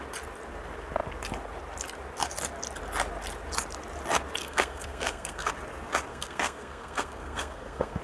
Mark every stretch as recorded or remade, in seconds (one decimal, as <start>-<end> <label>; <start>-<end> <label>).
0.0-4.4 recorded; 4.4-5.5 remade; 5.5-6.1 recorded; 6.1-8.0 remade